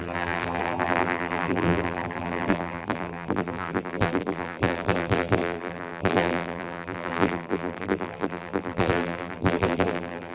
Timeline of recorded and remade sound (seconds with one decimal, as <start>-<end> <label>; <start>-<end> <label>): 0.0-10.3 remade